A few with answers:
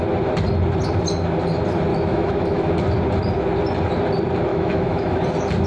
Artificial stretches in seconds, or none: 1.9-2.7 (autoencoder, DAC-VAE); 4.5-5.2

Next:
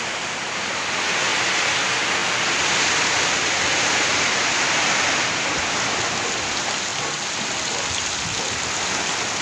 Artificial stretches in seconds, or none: none